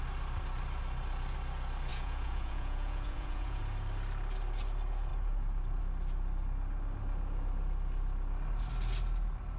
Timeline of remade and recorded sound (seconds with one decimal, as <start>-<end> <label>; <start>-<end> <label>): 0.0-1.9 recorded; 1.9-3.6 remade; 3.6-9.6 recorded